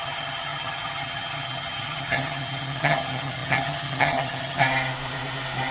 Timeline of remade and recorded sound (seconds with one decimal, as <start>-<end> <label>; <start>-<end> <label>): 0.0-4.6 remade; 4.6-5.7 recorded